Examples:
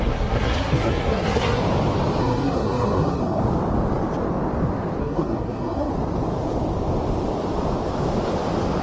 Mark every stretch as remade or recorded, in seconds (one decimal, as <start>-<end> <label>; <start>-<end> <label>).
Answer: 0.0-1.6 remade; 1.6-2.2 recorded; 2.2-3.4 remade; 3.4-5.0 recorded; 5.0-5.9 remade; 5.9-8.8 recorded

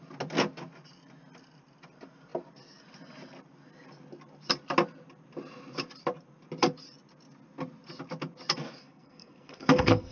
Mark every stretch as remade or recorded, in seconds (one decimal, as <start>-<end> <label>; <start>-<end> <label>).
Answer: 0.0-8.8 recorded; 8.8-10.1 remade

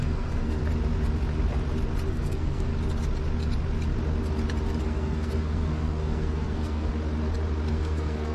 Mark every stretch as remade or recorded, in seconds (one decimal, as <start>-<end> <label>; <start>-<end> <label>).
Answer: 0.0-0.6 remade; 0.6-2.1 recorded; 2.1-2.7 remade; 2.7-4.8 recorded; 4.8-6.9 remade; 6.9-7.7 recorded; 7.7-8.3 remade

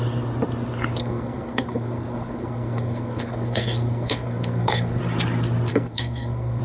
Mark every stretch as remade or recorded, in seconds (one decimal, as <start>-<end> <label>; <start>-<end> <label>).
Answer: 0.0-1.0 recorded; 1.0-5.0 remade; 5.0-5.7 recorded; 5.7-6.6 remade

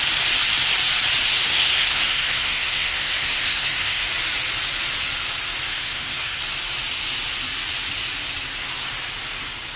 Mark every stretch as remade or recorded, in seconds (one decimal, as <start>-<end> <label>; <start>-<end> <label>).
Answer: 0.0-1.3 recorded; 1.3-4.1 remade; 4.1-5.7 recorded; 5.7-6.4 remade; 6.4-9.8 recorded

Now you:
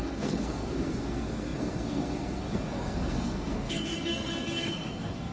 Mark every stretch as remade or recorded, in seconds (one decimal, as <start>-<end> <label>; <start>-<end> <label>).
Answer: 0.0-5.3 remade